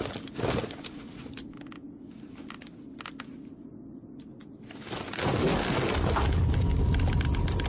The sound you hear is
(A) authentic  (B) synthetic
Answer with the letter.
A